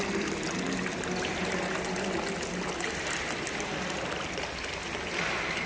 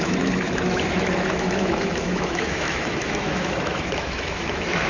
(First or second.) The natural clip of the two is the first